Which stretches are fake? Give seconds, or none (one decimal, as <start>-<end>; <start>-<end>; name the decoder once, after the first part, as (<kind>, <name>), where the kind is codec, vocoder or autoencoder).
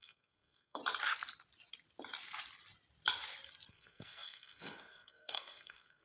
0.0-0.8 (codec, SNAC); 3.7-6.0